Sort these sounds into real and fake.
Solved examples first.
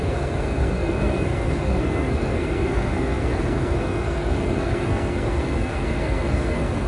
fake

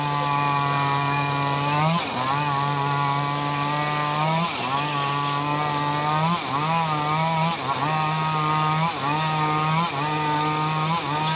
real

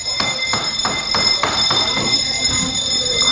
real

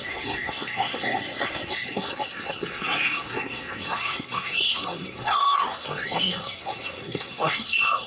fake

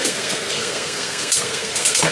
fake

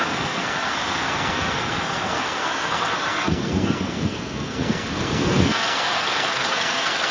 fake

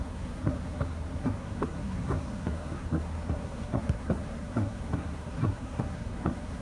fake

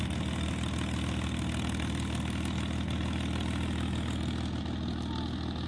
real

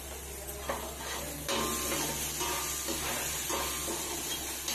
real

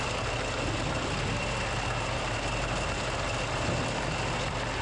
real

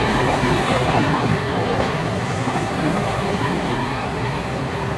fake